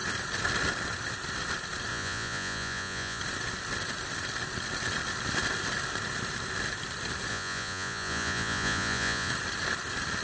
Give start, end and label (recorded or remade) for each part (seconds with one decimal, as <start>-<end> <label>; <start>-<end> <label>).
0.0-1.9 recorded; 1.9-3.2 remade; 3.2-7.3 recorded; 7.3-9.3 remade; 9.3-10.2 recorded